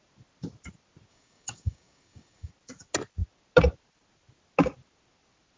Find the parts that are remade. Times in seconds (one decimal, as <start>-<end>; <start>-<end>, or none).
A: 1.1-2.5